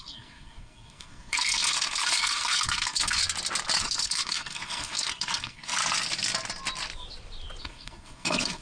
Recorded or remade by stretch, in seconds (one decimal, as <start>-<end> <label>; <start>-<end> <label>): 0.0-3.2 remade; 3.2-3.8 recorded; 3.8-5.8 remade; 5.8-7.6 recorded; 7.6-8.6 remade